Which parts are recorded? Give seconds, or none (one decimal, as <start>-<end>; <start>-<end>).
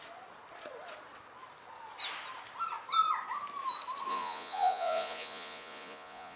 0.0-4.1